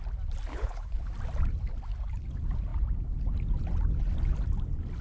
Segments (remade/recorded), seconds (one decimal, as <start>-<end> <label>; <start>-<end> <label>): 0.0-0.5 recorded; 0.5-1.1 remade; 1.1-5.0 recorded